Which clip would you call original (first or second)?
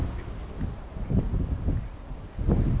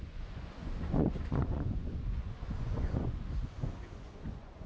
first